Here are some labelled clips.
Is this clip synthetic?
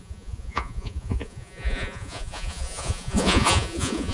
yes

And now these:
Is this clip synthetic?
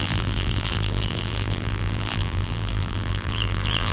yes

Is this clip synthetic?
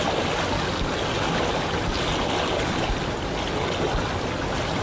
no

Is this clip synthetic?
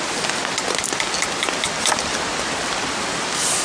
no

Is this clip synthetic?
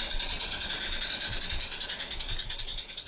no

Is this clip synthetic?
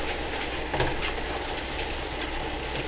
no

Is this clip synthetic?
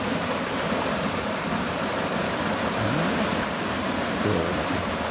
yes